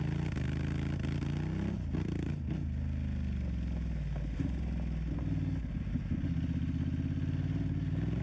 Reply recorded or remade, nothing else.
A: recorded